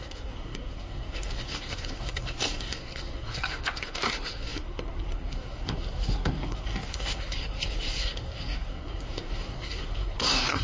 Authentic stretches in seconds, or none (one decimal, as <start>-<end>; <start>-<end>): none

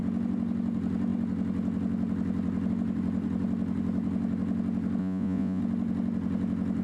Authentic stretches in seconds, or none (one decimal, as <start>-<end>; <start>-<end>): 0.0-5.0; 5.6-6.8

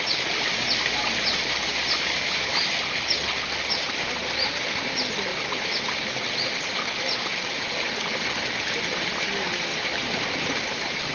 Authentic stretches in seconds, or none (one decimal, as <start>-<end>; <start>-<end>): 0.0-11.1

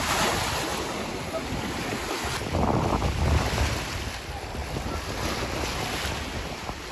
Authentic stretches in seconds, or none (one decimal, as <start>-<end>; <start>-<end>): 0.0-6.9

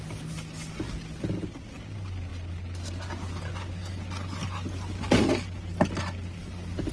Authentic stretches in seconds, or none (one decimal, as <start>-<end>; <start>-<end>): 0.0-6.9

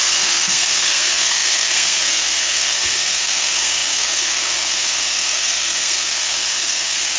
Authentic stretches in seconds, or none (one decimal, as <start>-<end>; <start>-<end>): none

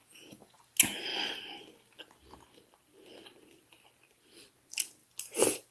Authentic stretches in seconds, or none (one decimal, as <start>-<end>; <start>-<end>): 0.6-5.7